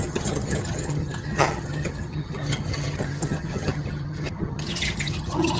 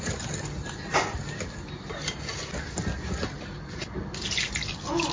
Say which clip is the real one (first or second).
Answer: second